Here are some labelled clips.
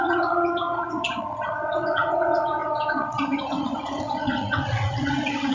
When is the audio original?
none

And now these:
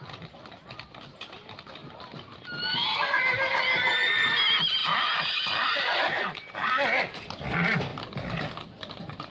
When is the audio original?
0.0-9.3

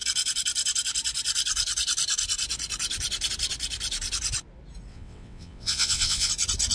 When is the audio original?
0.0-4.9; 6.3-6.7

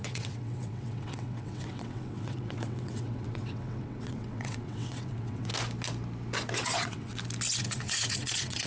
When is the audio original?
5.5-6.5; 7.1-7.6